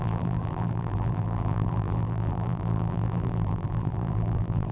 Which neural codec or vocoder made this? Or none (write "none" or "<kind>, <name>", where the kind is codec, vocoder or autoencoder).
vocoder, BigVGAN v2